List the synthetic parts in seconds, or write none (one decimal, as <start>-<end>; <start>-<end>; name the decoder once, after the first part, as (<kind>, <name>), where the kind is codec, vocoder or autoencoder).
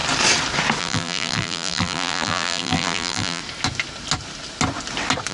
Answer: 0.8-3.4 (vocoder, BigVGAN v2)